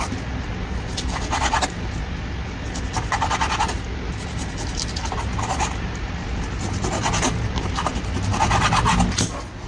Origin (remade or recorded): recorded